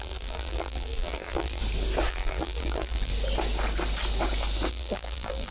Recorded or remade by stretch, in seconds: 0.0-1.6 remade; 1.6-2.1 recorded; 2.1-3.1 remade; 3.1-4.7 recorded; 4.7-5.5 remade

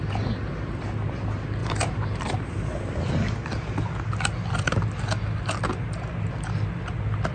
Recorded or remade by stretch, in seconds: 0.0-1.6 recorded; 1.6-3.1 remade; 3.1-7.3 recorded

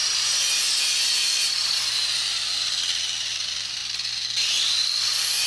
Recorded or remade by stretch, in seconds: 0.0-0.8 recorded; 0.8-3.8 remade; 3.8-5.1 recorded; 5.1-5.5 remade